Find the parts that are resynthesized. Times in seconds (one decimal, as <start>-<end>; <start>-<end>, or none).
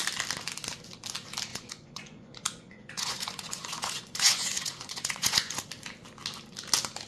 1.5-5.6